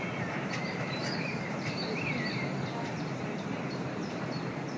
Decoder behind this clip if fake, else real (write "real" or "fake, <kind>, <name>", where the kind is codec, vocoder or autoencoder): fake, vocoder, BigVGAN v2